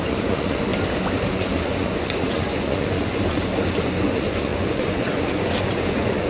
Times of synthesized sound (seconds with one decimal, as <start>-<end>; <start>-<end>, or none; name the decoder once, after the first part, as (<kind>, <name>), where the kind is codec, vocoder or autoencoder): 0.0-0.7 (vocoder, Vocos); 1.3-3.5; 4.1-6.3

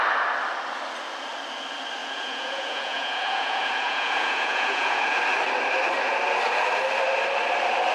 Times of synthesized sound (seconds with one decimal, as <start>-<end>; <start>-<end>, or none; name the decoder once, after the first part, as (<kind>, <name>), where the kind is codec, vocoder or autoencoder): 2.0-5.2 (vocoder, Vocos)